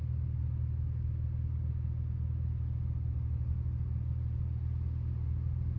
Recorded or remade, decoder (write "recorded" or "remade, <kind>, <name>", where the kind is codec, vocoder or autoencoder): recorded